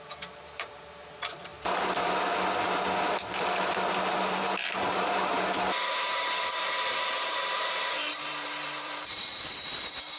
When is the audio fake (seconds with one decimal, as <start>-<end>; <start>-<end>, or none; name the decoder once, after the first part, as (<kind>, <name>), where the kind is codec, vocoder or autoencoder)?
0.0-1.5 (vocoder, BigVGAN v2); 4.1-5.3; 5.9-10.2